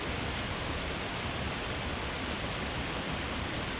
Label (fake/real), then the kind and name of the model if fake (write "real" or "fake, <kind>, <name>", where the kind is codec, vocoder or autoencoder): real